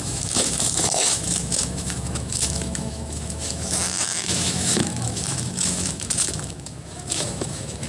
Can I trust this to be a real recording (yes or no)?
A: no